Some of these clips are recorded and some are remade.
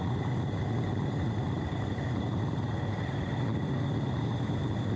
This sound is remade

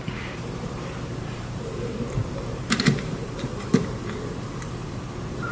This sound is remade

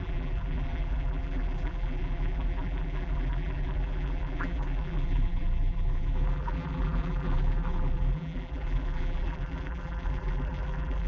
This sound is remade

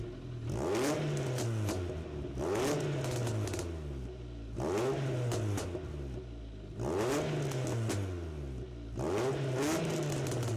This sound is recorded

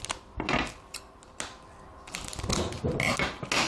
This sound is recorded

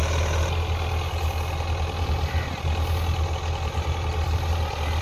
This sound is recorded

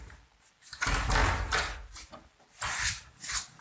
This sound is recorded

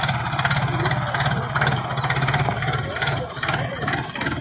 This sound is recorded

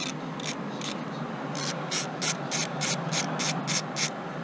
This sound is recorded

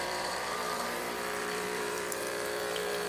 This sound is remade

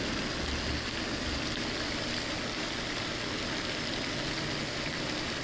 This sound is recorded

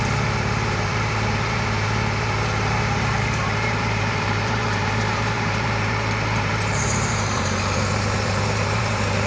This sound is remade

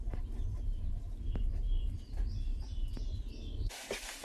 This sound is recorded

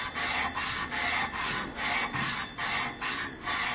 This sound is recorded